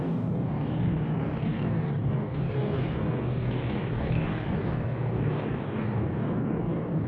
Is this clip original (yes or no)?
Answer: no